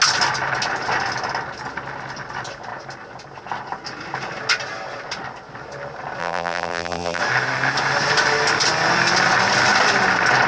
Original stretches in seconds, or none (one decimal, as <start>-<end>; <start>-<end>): 0.0-6.2; 7.2-10.5